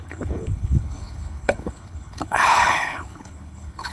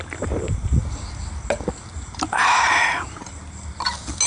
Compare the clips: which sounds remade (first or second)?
first